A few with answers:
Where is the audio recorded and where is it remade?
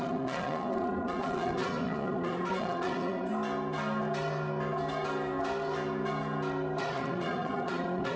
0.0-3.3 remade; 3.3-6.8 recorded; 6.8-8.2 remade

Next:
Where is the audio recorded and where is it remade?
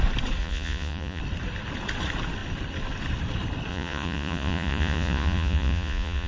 0.0-0.4 recorded; 0.4-1.2 remade; 1.2-3.7 recorded; 3.7-6.3 remade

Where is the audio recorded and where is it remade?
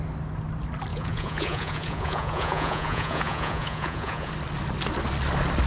0.0-0.9 recorded; 0.9-4.3 remade; 4.3-5.7 recorded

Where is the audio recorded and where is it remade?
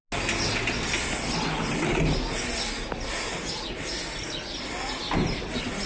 0.0-5.9 recorded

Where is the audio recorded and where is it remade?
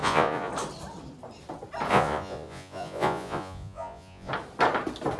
0.0-0.5 remade; 0.5-1.9 recorded; 1.9-4.3 remade; 4.3-5.2 recorded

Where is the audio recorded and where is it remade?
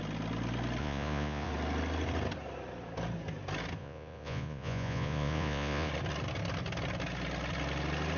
0.0-0.8 recorded; 0.8-1.5 remade; 1.5-3.8 recorded; 3.8-5.9 remade; 5.9-8.2 recorded